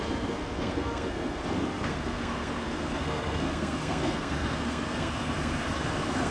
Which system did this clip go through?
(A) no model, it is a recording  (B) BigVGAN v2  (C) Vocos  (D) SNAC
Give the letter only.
D